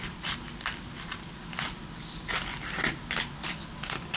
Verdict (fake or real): real